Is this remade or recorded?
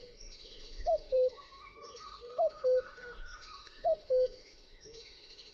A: remade